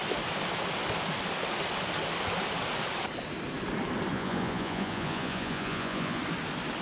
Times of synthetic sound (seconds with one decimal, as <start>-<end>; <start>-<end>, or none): 4.1-6.2